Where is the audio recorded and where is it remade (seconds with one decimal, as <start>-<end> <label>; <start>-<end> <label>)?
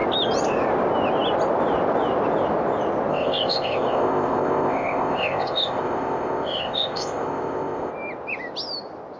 0.0-3.1 recorded; 3.1-7.9 remade; 7.9-9.2 recorded